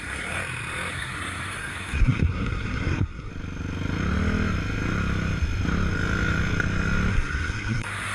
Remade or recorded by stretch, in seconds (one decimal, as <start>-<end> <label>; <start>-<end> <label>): 0.0-0.4 remade; 0.4-0.9 recorded; 0.9-3.3 remade; 3.3-7.1 recorded; 7.1-8.1 remade